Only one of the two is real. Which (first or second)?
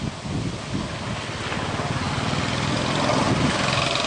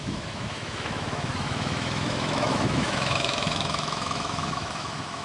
first